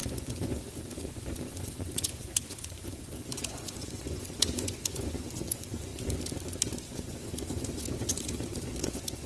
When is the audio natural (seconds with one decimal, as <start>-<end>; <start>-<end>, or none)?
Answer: 5.9-6.8